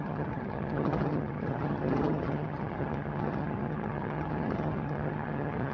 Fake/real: fake